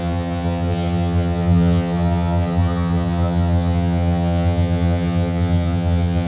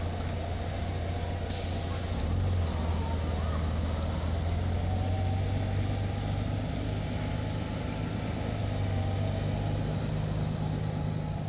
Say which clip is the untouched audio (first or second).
second